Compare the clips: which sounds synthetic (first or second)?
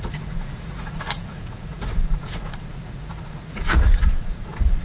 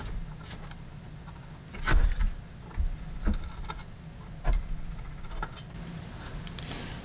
first